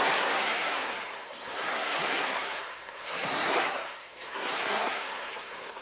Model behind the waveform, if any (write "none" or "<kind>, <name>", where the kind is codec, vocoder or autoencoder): codec, SNAC